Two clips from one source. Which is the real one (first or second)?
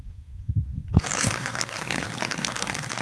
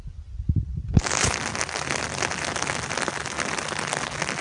second